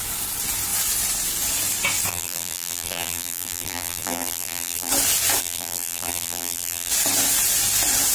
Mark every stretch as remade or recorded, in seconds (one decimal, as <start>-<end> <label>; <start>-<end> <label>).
0.0-2.1 recorded; 2.1-4.9 remade; 4.9-5.4 recorded; 5.4-6.9 remade; 6.9-8.1 recorded